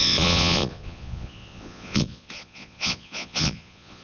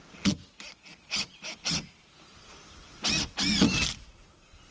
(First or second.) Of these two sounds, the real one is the second